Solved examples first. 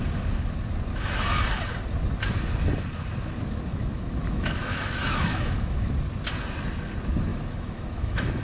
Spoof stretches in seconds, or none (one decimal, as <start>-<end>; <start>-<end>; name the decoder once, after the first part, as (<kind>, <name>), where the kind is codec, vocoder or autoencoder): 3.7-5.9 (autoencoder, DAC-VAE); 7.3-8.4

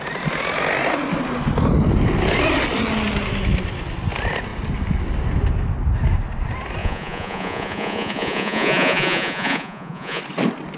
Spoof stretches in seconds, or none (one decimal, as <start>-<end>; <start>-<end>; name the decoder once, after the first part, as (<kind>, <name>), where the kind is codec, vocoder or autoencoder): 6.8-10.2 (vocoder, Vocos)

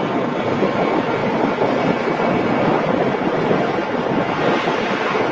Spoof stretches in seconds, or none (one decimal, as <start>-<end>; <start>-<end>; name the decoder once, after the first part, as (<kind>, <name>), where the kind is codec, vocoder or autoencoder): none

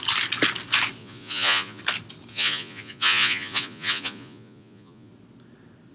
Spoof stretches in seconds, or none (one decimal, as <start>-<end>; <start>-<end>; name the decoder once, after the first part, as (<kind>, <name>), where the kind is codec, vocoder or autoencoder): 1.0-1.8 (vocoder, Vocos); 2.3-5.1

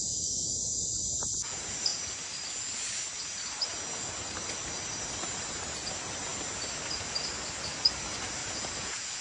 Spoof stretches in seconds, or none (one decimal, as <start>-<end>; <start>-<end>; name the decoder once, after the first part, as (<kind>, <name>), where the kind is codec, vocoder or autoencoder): 8.4-9.2 (vocoder, Vocos)

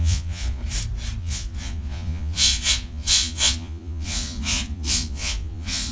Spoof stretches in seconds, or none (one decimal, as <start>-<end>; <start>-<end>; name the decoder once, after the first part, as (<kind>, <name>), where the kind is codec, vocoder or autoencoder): 0.0-0.6 (vocoder, Vocos); 1.2-5.9

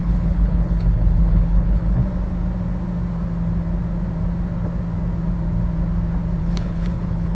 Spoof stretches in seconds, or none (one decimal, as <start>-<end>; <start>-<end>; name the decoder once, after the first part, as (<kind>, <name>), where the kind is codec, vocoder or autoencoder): 0.0-2.0 (codec, HILCodec); 6.4-7.3